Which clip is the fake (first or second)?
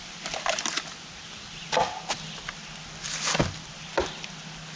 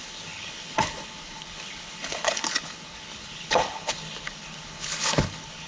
second